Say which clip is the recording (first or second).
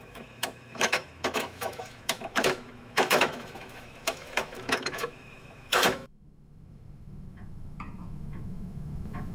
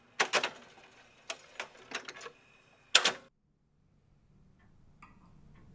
second